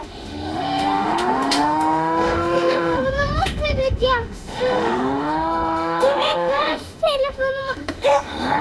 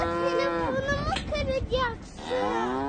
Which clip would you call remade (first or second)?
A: first